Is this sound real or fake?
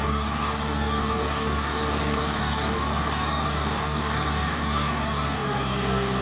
fake